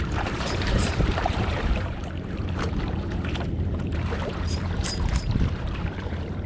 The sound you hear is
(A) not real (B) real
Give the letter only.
A